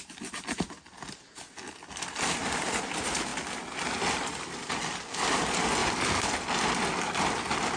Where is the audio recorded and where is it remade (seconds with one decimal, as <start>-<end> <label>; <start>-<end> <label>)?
0.0-7.8 recorded